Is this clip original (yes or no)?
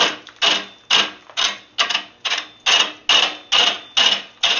yes